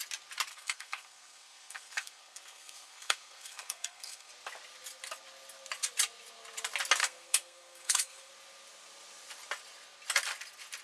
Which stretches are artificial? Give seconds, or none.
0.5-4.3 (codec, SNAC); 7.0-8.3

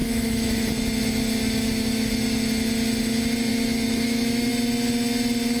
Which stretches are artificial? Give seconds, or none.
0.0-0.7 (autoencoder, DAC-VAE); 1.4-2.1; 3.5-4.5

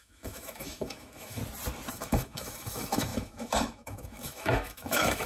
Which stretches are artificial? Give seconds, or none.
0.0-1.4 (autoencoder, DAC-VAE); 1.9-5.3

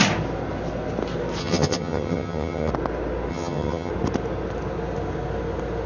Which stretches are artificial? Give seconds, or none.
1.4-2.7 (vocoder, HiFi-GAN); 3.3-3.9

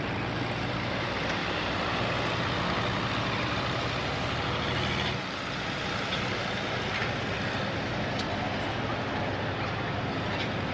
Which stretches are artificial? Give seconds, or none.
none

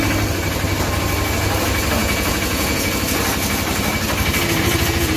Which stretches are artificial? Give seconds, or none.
2.0-2.9 (vocoder, Vocos)